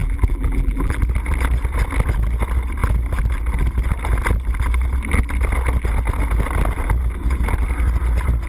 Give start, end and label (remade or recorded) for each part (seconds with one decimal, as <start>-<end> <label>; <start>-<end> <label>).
0.0-1.0 remade; 1.0-8.5 recorded